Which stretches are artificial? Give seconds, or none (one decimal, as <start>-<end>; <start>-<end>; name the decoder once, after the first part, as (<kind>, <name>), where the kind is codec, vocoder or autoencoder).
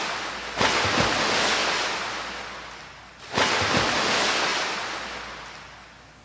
none